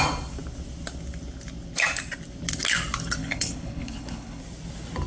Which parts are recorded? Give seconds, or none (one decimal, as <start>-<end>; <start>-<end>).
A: 0.0-3.2; 4.4-5.1

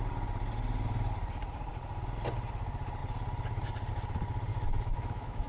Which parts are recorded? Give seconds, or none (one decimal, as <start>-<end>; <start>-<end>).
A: 0.0-4.5

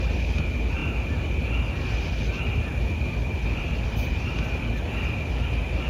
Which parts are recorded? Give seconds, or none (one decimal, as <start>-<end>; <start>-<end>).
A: 0.0-5.9

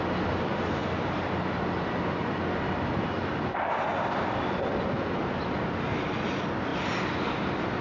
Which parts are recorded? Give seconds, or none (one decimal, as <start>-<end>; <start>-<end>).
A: 0.0-0.8; 1.6-7.8

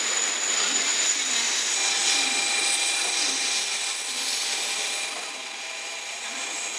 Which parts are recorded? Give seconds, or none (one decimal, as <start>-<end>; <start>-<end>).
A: 0.0-6.8

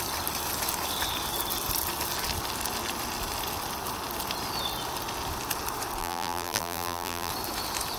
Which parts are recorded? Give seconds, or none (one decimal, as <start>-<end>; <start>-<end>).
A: 0.0-6.0; 7.3-8.0

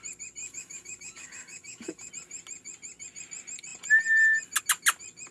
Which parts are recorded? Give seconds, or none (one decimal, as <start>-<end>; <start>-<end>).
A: 0.0-0.4; 2.1-5.3

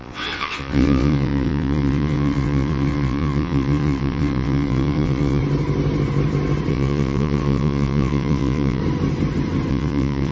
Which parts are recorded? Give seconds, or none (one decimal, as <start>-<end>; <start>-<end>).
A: 5.4-6.7; 8.8-9.7